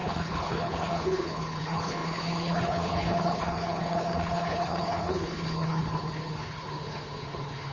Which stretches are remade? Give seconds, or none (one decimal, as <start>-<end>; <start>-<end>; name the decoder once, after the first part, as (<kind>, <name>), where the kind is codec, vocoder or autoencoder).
0.0-7.7 (codec, HILCodec)